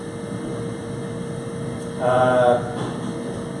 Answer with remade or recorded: recorded